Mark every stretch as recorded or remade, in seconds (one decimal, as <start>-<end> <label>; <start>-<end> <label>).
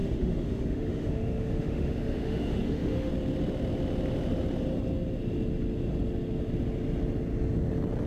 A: 0.0-3.1 remade; 3.1-8.1 recorded